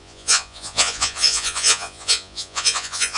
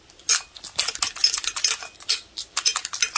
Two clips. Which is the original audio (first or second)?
second